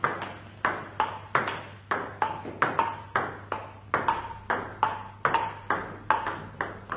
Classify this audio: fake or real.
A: real